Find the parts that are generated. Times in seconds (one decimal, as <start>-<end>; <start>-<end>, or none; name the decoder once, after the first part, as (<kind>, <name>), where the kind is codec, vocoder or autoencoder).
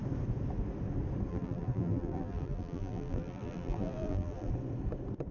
1.3-4.5 (vocoder, BigVGAN v2)